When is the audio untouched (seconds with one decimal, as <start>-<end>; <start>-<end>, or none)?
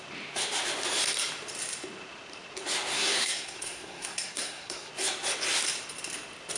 0.0-2.9; 4.9-6.6